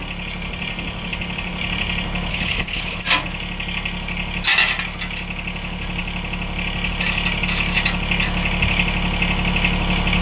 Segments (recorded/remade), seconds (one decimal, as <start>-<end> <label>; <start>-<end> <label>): 0.0-2.3 recorded; 2.3-3.0 remade; 3.0-10.2 recorded